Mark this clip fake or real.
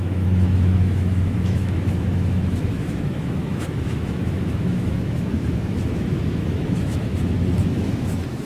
fake